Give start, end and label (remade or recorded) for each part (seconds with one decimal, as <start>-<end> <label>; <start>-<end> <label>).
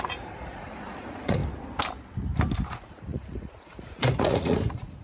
0.0-1.4 remade; 1.4-2.7 recorded; 2.7-5.0 remade